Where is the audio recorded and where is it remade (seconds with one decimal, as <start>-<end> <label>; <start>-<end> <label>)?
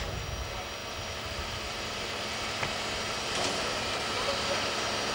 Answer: 0.0-0.8 recorded; 0.8-3.9 remade; 3.9-5.1 recorded